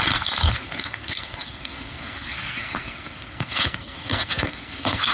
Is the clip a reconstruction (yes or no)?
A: yes